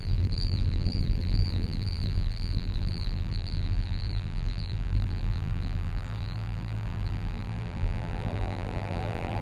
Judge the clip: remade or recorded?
remade